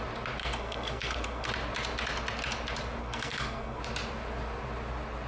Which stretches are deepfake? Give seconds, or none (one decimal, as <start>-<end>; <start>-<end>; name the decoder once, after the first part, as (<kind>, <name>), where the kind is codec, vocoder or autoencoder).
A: 0.4-1.5 (codec, SNAC); 3.0-3.8